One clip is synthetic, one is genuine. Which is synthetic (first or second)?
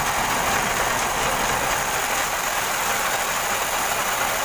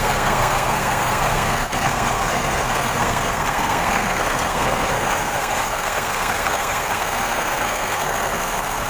second